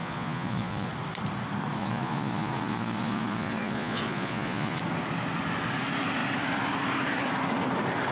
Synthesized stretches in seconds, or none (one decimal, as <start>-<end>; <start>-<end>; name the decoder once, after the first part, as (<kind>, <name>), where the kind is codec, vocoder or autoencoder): 0.0-0.9 (vocoder, Vocos); 1.8-4.8